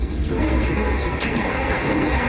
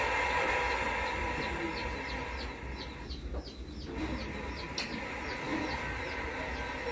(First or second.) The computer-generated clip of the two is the first